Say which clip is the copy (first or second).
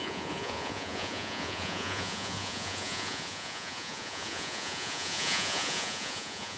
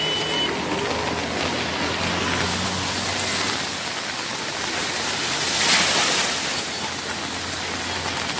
first